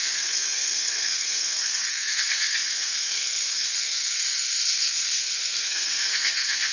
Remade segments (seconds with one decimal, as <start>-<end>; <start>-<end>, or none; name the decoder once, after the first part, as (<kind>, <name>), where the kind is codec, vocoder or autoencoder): 0.0-6.7 (codec, SNAC)